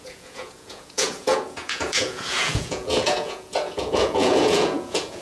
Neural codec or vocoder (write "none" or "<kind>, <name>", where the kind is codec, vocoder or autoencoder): vocoder, Vocos